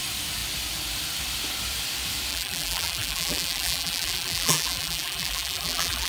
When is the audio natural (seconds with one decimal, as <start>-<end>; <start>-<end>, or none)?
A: 0.0-2.3